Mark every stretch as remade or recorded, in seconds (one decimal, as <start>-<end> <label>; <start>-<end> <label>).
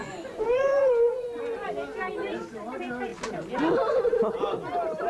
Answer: 0.0-1.7 remade; 1.7-5.1 recorded